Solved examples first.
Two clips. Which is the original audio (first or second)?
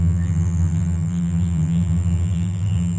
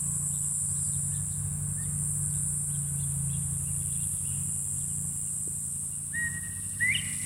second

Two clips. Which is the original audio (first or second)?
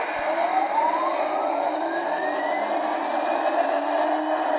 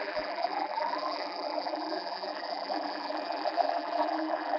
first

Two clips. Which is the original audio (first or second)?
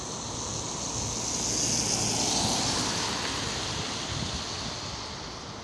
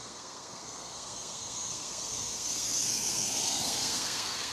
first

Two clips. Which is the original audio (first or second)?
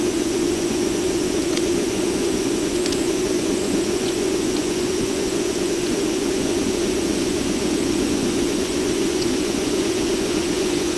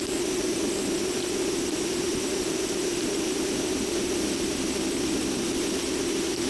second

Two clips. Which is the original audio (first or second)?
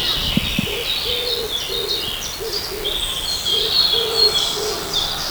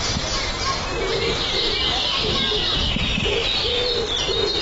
second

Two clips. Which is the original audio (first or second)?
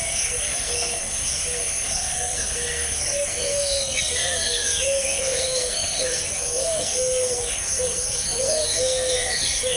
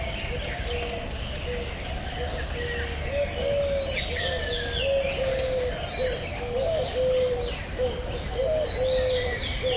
second